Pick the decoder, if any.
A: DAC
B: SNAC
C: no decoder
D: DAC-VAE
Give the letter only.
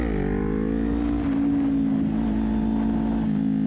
C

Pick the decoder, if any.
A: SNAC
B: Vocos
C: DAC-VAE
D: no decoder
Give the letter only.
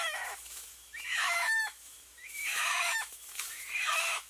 C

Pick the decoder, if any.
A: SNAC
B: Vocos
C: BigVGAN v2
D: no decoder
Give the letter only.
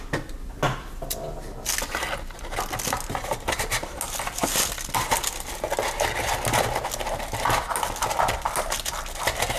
D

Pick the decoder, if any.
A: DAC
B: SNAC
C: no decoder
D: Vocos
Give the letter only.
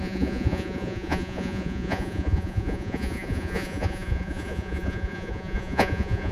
D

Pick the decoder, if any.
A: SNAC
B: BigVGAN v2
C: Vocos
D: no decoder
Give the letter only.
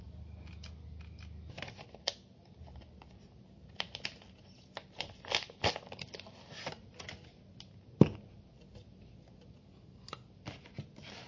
D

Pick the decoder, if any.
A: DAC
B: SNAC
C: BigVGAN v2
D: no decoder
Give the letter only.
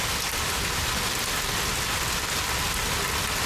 D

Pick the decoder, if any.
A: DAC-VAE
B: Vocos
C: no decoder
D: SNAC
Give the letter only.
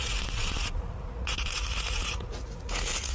B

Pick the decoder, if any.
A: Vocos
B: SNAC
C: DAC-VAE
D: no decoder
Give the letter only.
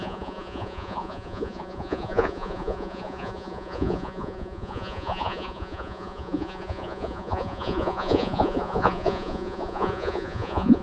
A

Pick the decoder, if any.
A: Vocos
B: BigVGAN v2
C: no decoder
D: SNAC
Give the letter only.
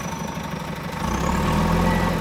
C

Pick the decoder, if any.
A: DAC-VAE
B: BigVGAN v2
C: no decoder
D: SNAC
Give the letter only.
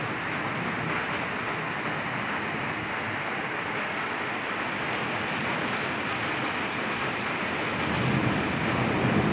C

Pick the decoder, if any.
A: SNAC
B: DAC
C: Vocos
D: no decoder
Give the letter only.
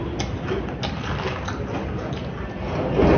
D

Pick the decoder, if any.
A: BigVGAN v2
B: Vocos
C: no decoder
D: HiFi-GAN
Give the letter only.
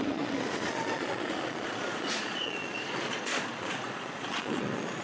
B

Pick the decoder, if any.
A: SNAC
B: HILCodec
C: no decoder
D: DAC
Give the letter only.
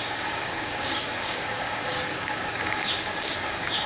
D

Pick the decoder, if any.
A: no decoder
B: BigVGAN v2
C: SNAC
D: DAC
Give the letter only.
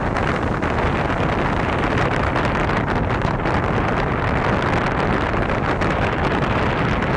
A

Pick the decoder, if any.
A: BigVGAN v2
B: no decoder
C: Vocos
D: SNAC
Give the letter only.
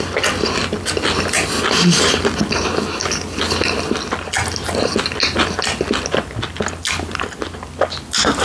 B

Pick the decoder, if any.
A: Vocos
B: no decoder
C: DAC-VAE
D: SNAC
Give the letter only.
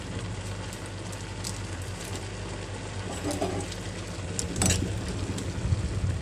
B